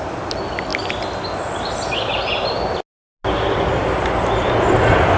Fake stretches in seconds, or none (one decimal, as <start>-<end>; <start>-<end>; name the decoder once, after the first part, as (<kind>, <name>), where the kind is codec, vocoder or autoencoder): none